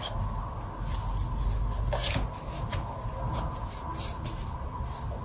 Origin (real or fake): real